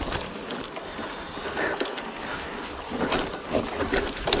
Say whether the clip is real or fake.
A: real